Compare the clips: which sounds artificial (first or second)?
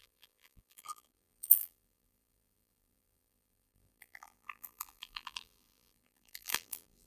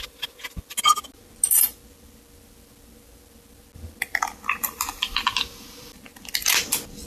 first